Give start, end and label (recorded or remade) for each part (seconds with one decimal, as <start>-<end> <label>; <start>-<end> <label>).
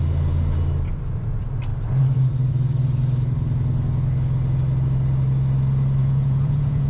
0.0-6.0 recorded; 6.0-6.9 remade